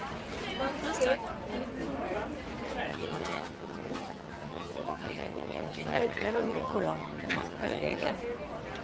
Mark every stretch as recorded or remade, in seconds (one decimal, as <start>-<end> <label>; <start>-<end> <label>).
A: 0.0-2.9 recorded; 2.9-8.1 remade; 8.1-8.8 recorded